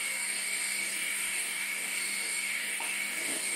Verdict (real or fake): fake